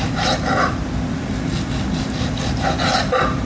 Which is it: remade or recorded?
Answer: remade